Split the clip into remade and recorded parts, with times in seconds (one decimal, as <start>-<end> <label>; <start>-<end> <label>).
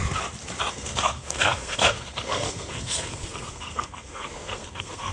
0.0-0.7 recorded; 0.7-5.1 remade